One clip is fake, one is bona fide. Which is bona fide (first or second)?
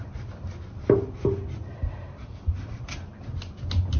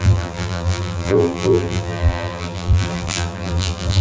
first